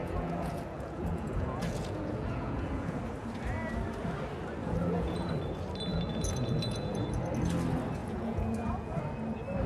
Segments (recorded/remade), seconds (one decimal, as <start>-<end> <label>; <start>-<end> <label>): 0.0-3.0 remade; 3.0-4.6 recorded; 4.6-5.3 remade; 5.3-5.9 recorded; 5.9-7.0 remade; 7.0-8.0 recorded; 8.0-9.0 remade; 9.0-9.7 recorded